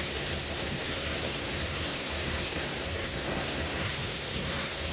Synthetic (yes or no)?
yes